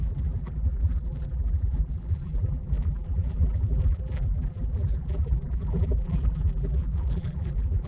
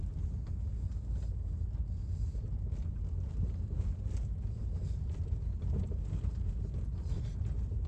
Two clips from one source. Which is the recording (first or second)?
second